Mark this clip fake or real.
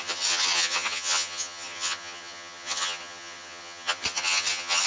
fake